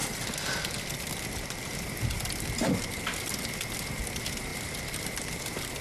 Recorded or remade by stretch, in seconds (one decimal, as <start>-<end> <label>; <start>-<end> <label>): 0.0-4.5 recorded; 4.5-5.8 remade